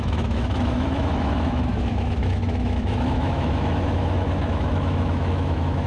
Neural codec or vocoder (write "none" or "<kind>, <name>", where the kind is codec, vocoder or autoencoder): autoencoder, DAC-VAE